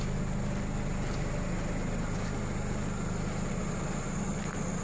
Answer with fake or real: real